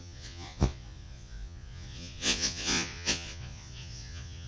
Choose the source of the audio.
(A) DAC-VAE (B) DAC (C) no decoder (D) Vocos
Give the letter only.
D